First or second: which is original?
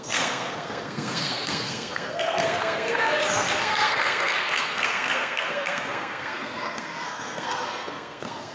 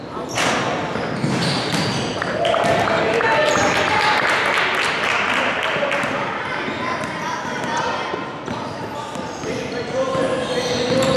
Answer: second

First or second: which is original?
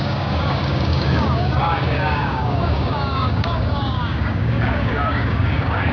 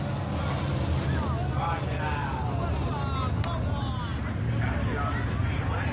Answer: second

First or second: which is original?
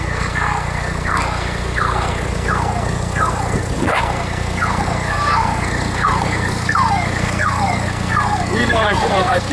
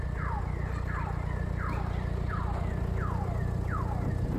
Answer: second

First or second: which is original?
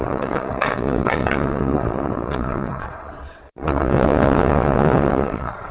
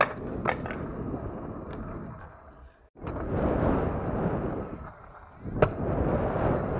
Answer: second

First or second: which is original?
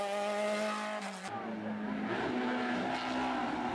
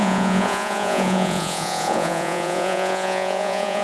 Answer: first